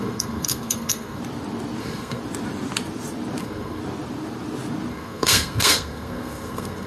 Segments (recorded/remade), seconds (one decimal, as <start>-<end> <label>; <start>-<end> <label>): 0.0-1.2 remade; 1.2-1.8 recorded; 1.8-2.2 remade; 2.2-3.4 recorded; 3.4-3.8 remade; 3.8-4.9 recorded; 4.9-6.9 remade